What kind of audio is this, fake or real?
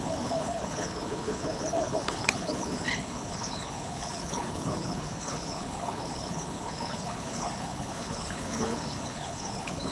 fake